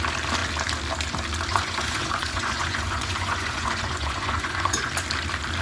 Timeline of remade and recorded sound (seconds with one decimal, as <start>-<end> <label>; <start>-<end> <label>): 0.0-1.5 recorded; 1.5-4.9 remade; 4.9-5.6 recorded